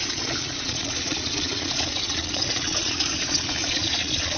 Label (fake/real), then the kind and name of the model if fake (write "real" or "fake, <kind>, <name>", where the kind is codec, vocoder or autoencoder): fake, vocoder, Vocos